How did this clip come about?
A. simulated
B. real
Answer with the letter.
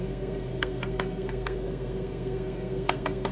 A